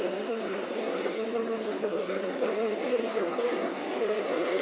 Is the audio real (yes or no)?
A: no